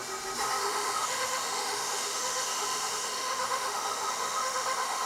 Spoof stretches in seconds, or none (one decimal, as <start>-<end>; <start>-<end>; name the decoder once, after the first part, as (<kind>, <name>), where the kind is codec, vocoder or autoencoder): 0.6-5.1 (autoencoder, DAC-VAE)